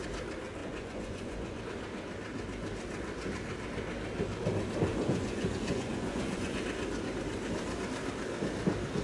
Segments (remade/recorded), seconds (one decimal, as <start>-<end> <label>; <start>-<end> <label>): 0.0-0.6 recorded; 0.6-1.6 remade; 1.6-4.9 recorded; 4.9-6.6 remade; 6.6-9.0 recorded